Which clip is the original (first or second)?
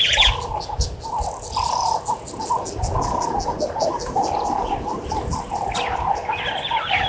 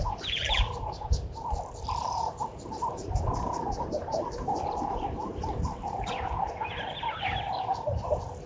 first